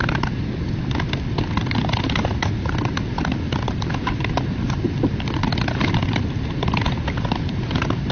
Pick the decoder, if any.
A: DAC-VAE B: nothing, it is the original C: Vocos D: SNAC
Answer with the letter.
B